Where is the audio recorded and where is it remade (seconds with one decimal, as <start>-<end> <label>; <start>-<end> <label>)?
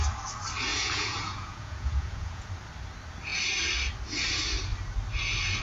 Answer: 0.0-0.7 recorded; 0.7-2.5 remade; 2.5-5.6 recorded